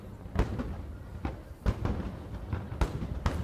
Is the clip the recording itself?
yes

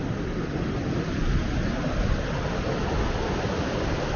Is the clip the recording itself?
yes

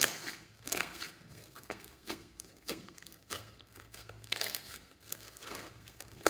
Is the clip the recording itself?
no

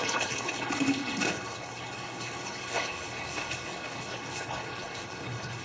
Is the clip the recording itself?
no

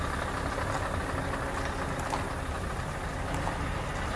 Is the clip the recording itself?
yes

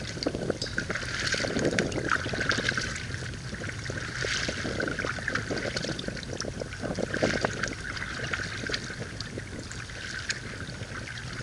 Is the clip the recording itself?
yes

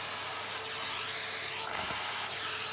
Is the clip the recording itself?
yes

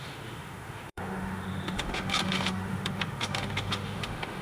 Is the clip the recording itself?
no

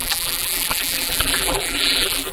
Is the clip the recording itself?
no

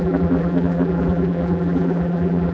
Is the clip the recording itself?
no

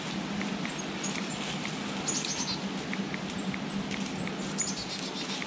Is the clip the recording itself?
yes